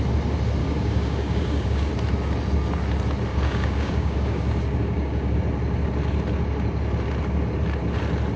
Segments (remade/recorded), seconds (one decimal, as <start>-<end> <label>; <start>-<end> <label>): 0.0-0.6 recorded; 0.6-1.9 remade; 1.9-3.3 recorded; 3.3-5.4 remade; 5.4-8.4 recorded